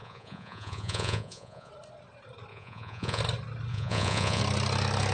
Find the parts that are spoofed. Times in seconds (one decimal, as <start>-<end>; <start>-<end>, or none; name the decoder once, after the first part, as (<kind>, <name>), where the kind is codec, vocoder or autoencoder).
0.0-1.7 (vocoder, Vocos); 2.5-3.2; 3.7-4.4